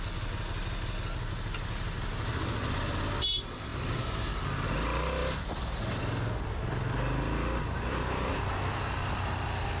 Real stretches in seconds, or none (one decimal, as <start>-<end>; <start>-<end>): 0.0-3.7; 4.3-5.2; 6.0-9.8